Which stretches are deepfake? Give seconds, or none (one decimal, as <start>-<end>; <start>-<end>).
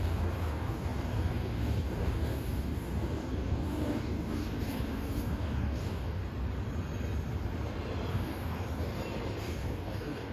0.0-6.2; 8.1-8.9; 9.4-10.3